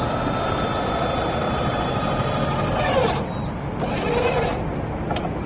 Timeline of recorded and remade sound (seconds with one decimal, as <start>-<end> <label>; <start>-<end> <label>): 0.0-5.5 recorded